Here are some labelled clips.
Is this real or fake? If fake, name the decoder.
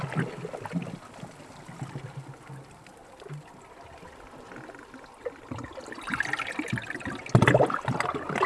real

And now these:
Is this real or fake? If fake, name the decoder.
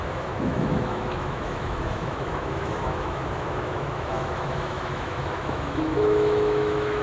fake, autoencoder, DAC-VAE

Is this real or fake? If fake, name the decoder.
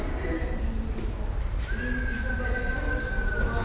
real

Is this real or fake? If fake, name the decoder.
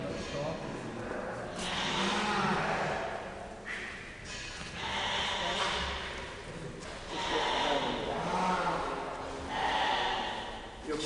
real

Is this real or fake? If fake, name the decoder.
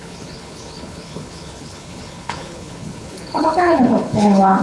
fake, codec, HILCodec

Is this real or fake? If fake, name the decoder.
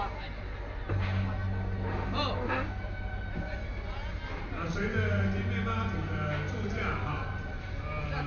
real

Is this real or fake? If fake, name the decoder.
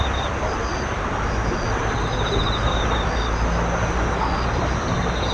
real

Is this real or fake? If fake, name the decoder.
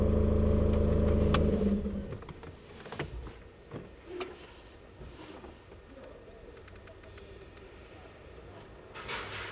real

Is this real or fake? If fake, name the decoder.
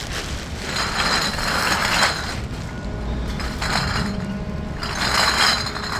real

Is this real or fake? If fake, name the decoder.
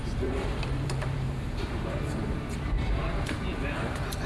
fake, vocoder, BigVGAN v2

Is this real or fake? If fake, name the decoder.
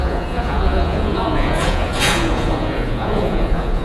fake, vocoder, Vocos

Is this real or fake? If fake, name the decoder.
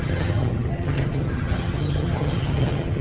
fake, vocoder, HiFi-GAN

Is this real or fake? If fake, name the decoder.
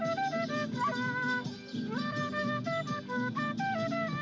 real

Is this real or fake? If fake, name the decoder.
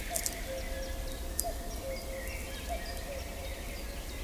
real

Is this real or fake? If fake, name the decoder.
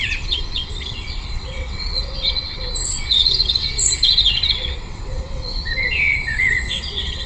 fake, vocoder, WaveNeXt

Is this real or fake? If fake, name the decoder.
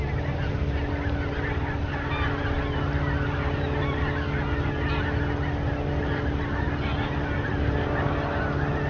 real